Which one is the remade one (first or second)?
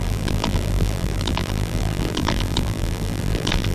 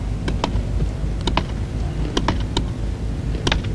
first